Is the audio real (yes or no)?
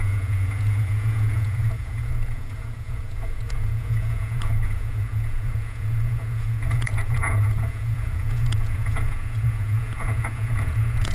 no